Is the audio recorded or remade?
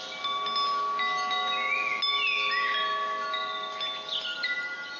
recorded